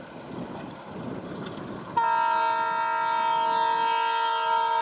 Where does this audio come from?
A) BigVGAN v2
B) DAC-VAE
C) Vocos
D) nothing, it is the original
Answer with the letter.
D